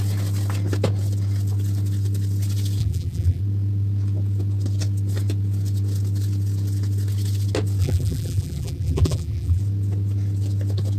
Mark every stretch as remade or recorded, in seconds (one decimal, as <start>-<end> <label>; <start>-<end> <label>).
0.0-2.8 recorded; 2.8-3.4 remade; 3.4-7.8 recorded; 7.8-9.6 remade; 9.6-11.0 recorded

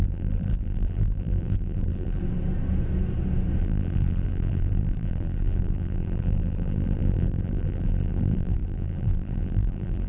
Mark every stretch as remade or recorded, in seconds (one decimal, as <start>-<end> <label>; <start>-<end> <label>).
0.0-2.2 remade; 2.2-3.6 recorded; 3.6-10.1 remade

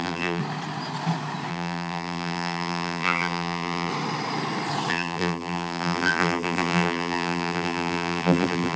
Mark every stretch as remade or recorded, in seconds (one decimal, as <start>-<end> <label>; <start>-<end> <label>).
0.0-0.4 remade; 0.4-1.5 recorded; 1.5-3.9 remade; 3.9-4.9 recorded; 4.9-8.8 remade

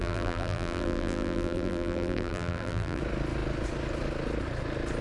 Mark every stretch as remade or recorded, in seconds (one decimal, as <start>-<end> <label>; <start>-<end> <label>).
0.0-3.0 remade; 3.0-5.0 recorded

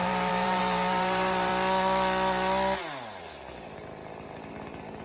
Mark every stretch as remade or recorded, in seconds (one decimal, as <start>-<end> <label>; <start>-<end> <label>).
0.0-1.5 remade; 1.5-4.5 recorded; 4.5-5.0 remade

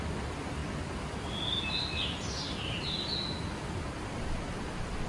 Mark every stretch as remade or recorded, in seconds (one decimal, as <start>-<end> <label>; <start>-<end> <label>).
0.0-5.1 recorded

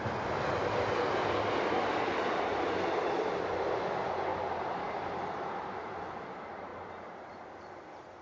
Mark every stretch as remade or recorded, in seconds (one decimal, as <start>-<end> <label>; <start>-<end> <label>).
0.0-4.3 recorded; 4.3-6.0 remade; 6.0-8.2 recorded